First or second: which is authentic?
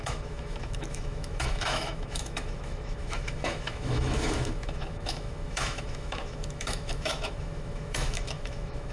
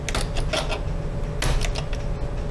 second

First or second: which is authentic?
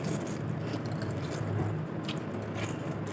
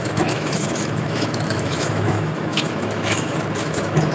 first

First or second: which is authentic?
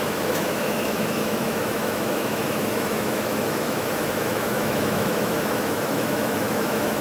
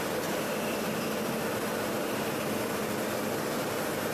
second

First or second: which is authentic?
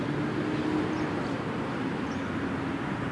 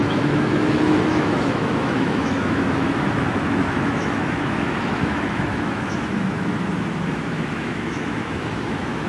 first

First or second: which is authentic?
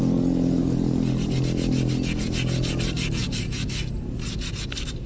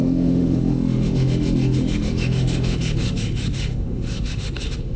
first